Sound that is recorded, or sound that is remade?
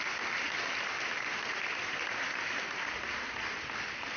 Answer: recorded